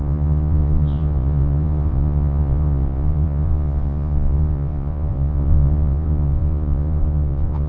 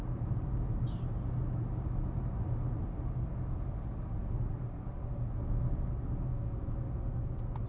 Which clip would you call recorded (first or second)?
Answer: second